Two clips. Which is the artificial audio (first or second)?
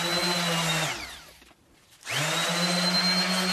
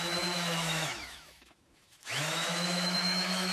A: second